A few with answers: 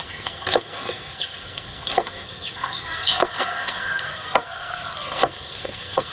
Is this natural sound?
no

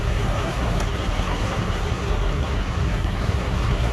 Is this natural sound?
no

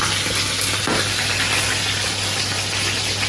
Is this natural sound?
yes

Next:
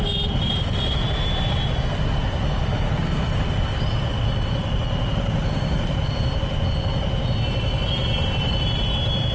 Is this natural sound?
yes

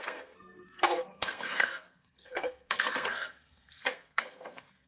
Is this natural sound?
no